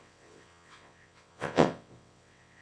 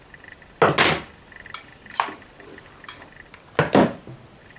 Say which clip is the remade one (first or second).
first